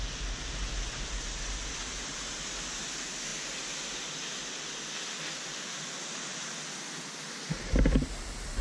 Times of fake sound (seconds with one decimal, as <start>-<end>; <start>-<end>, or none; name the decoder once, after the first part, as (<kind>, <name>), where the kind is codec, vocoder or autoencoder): none